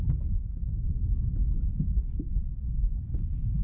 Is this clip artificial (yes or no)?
no